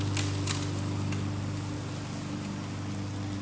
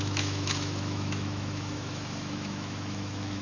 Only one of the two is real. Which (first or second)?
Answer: first